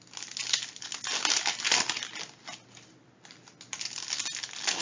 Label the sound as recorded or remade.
recorded